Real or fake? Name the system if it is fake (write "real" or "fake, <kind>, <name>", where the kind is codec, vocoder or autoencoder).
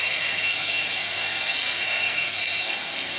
fake, codec, SNAC